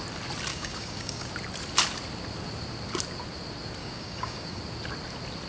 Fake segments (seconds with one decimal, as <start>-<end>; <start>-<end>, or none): 0.5-1.3; 3.8-4.6